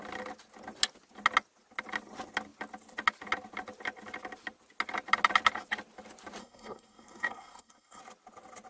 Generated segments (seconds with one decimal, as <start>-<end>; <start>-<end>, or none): 6.4-8.0